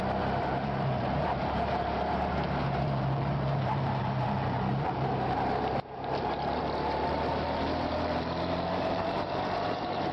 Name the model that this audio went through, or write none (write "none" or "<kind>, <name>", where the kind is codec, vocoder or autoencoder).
vocoder, BigVGAN v2